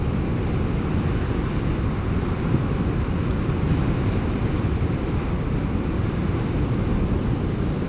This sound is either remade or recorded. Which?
recorded